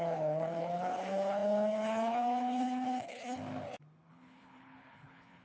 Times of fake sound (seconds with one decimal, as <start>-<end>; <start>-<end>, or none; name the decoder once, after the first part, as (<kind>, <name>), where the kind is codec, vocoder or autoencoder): 0.0-3.4 (codec, HILCodec); 4.1-5.4